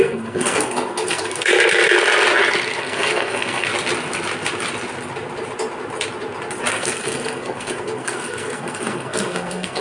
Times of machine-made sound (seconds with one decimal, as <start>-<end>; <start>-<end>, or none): 0.0-1.5; 2.8-3.7; 6.7-9.8

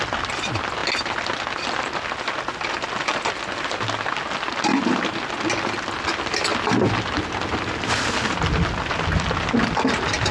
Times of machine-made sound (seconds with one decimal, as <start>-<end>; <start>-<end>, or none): none

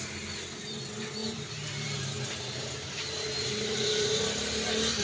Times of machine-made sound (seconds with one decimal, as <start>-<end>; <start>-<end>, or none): 1.2-4.2

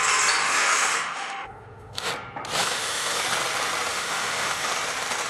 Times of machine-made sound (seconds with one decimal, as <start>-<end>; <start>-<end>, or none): 0.4-2.1; 2.6-3.2; 3.9-4.7